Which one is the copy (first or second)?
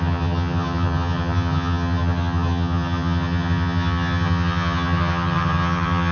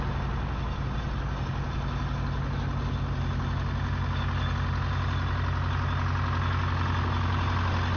first